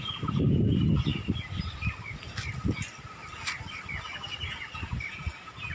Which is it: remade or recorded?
recorded